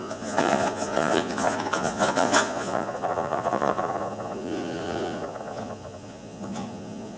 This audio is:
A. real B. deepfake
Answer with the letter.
B